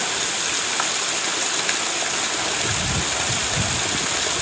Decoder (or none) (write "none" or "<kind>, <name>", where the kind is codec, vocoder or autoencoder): none